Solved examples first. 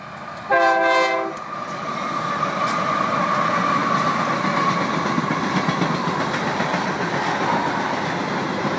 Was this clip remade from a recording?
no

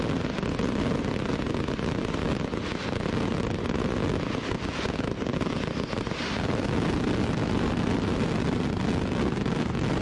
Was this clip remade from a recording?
no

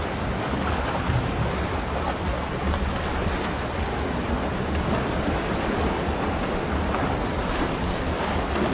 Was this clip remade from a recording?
no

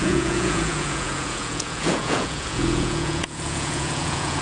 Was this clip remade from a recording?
yes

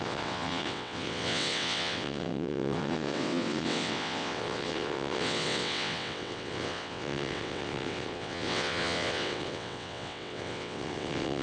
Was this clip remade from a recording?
yes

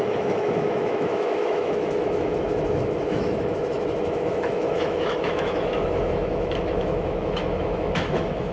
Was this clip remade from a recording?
yes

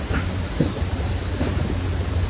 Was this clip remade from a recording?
no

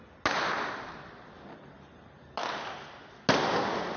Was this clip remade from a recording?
no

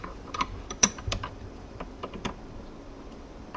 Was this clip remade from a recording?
yes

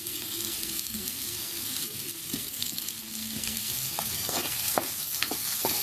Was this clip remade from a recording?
yes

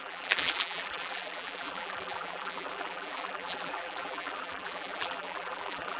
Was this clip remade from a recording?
yes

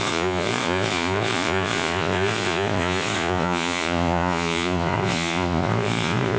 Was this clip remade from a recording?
yes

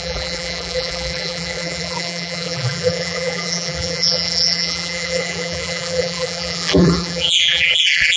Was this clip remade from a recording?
yes